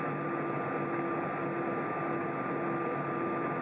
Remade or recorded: recorded